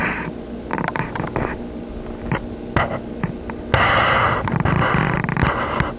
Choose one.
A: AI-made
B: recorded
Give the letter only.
B